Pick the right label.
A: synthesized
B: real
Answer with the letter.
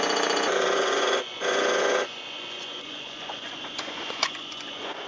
A